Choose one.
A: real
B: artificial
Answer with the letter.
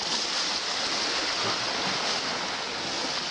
A